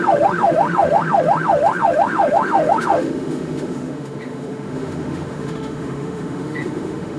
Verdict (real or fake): fake